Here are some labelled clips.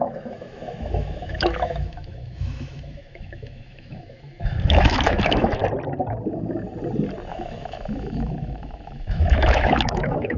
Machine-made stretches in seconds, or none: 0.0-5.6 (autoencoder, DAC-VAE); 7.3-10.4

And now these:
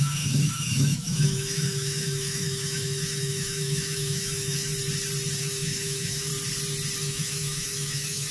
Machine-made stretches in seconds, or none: 0.0-4.7 (autoencoder, DAC-VAE); 5.4-6.3; 7.0-8.3

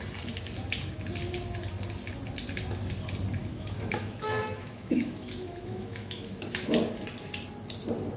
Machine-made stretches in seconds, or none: 3.4-6.7 (autoencoder, DAC-VAE)

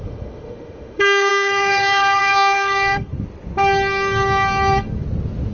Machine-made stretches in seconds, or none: 0.0-3.1 (autoencoder, DAC-VAE)

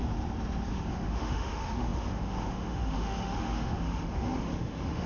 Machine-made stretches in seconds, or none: 0.7-5.1 (autoencoder, DAC-VAE)

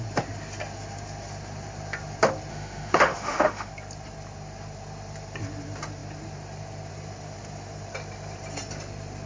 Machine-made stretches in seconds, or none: 2.5-3.7 (autoencoder, DAC-VAE)

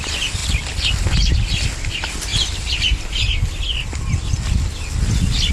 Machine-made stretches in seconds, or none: none

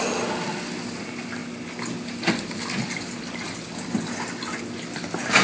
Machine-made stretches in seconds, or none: none